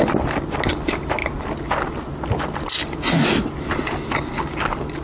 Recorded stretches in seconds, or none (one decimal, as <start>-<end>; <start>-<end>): 0.0-5.0